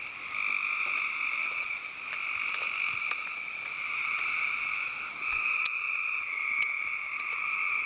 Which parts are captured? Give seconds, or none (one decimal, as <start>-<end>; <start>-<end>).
0.0-1.4; 1.9-3.0